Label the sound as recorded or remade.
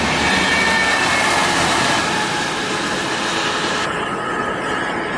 recorded